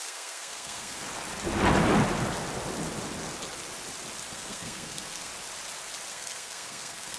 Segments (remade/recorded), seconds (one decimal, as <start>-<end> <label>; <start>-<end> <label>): 0.0-1.1 remade; 1.1-4.3 recorded; 4.3-5.3 remade; 5.3-6.1 recorded; 6.1-7.2 remade